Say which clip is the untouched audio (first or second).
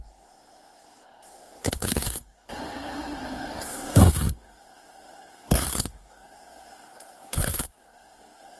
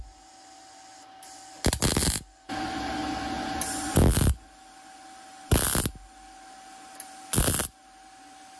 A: second